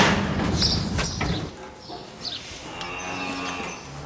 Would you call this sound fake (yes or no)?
no